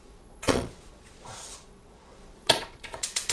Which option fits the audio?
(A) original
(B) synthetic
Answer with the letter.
B